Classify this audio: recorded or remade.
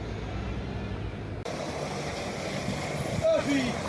recorded